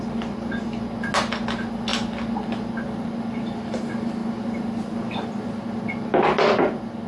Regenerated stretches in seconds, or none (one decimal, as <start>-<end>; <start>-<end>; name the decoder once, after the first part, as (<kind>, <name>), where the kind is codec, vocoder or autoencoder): none

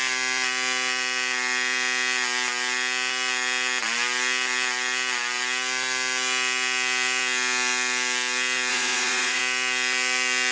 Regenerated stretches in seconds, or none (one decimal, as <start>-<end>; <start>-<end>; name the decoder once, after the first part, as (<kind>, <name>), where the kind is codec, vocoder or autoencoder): 8.7-9.4 (vocoder, Vocos)